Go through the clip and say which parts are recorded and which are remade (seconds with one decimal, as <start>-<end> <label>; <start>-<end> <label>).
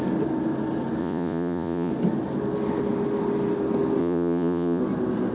0.0-1.0 recorded; 1.0-1.9 remade; 1.9-4.0 recorded; 4.0-4.8 remade; 4.8-5.3 recorded